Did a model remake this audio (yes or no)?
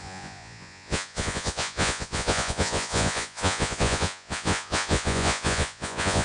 yes